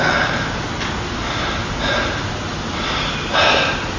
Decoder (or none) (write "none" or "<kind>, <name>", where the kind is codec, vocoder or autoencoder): none